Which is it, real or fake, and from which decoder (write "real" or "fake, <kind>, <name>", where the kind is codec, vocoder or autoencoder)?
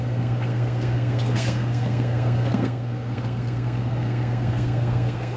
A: fake, codec, SNAC